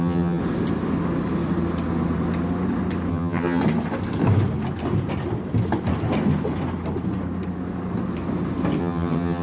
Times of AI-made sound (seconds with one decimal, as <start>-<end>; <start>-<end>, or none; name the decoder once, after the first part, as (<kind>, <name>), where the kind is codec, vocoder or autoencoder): 0.0-0.4 (vocoder, HiFi-GAN); 3.1-3.6; 8.8-9.4